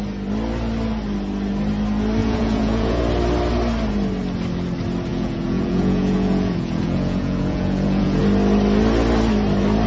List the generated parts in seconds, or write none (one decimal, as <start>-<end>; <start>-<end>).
2.2-3.0; 5.1-8.2